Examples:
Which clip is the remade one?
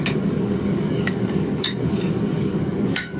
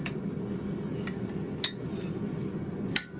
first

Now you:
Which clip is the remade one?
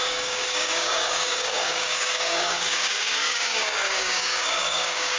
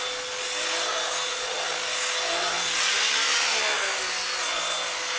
first